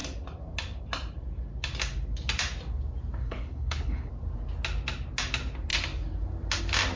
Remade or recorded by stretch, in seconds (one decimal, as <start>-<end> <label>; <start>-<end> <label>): 0.0-3.2 recorded; 3.2-4.1 remade; 4.1-7.0 recorded